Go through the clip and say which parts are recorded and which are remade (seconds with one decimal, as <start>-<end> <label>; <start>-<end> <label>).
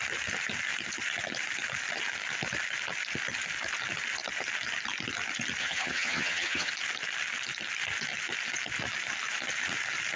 0.0-5.6 recorded; 5.6-6.7 remade; 6.7-10.2 recorded